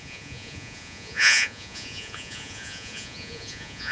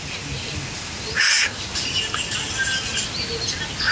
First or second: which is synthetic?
first